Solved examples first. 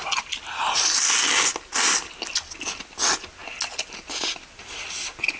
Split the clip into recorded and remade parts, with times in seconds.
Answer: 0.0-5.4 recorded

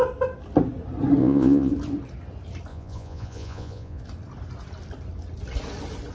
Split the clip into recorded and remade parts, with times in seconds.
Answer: 0.0-1.2 recorded; 1.2-1.7 remade; 1.7-2.7 recorded; 2.7-4.0 remade; 4.0-6.1 recorded

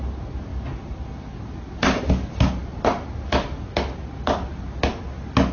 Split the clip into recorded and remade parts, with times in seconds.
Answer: 0.0-5.5 recorded

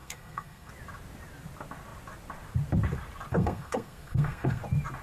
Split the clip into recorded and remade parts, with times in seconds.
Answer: 0.0-0.7 remade; 0.7-3.3 recorded; 3.3-4.6 remade; 4.6-5.0 recorded

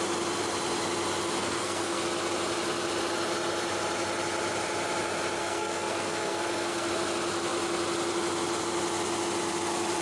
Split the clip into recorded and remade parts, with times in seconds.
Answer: 0.0-1.4 recorded; 1.4-2.0 remade; 2.0-5.4 recorded; 5.4-6.9 remade; 6.9-10.0 recorded

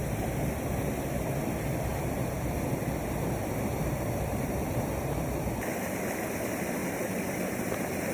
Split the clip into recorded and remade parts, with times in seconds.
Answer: 0.0-1.9 recorded; 1.9-2.6 remade; 2.6-3.7 recorded; 3.7-5.0 remade; 5.0-6.8 recorded; 6.8-8.1 remade